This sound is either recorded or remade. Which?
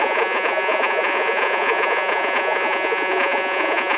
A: remade